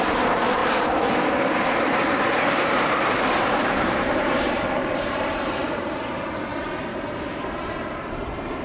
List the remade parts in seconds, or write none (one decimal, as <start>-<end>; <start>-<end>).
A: 0.0-6.5; 7.6-8.6